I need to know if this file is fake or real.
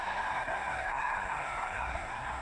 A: fake